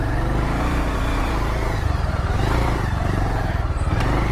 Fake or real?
fake